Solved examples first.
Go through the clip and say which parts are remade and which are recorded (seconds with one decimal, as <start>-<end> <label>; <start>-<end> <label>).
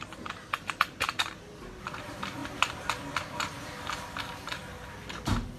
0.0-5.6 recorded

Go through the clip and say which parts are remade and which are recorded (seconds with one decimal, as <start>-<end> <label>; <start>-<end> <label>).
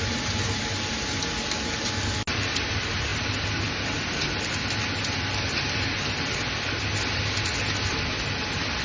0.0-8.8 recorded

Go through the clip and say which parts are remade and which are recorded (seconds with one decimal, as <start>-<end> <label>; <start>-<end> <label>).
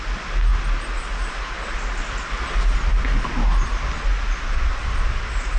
0.0-5.6 recorded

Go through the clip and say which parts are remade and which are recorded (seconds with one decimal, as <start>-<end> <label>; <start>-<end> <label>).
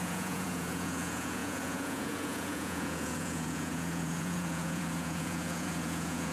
0.0-6.3 remade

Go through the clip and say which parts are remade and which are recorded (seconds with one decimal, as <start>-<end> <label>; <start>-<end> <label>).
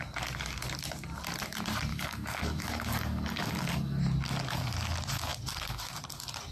0.0-1.9 recorded; 1.9-4.0 remade; 4.0-6.5 recorded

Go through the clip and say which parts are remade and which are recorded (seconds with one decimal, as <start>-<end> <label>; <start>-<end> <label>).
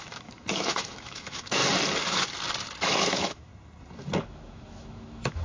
0.0-1.6 remade; 1.6-2.8 recorded; 2.8-3.5 remade; 3.5-4.2 recorded; 4.2-5.4 remade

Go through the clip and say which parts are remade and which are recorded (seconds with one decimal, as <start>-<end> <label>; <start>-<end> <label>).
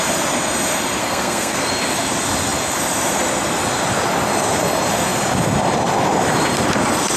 0.0-1.0 recorded; 1.0-1.7 remade; 1.7-7.2 recorded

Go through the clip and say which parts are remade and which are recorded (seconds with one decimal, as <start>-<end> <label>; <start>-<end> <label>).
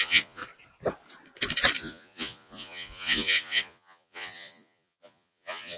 0.0-0.4 remade; 0.4-1.8 recorded; 1.8-5.8 remade